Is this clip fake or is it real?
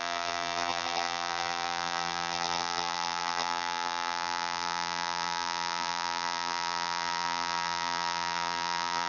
fake